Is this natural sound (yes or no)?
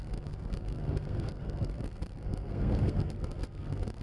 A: no